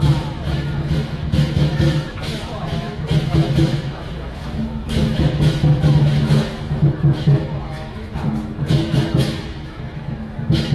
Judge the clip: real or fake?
fake